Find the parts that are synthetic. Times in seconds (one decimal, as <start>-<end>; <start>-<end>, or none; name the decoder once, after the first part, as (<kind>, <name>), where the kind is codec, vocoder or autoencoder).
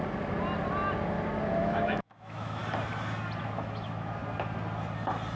1.6-2.6 (autoencoder, DAC-VAE); 3.4-4.2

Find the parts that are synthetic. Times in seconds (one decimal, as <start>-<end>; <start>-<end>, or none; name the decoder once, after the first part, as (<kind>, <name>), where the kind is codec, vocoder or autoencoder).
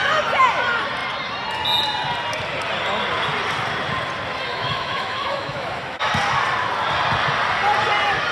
4.5-6.1 (autoencoder, DAC-VAE)